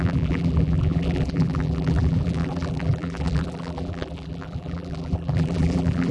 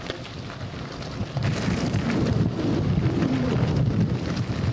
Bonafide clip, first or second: second